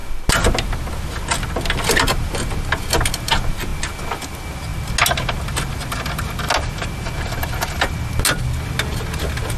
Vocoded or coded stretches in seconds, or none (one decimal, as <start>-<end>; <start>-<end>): none